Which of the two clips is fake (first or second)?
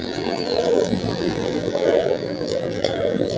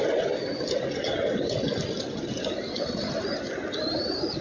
first